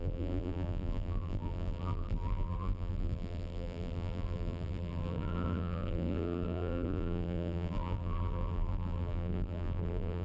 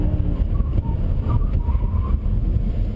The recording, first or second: second